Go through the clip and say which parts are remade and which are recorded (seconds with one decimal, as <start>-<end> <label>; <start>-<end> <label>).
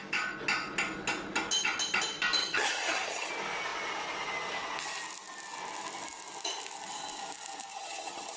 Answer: 0.0-2.4 recorded; 2.4-3.3 remade; 3.3-7.7 recorded; 7.7-8.4 remade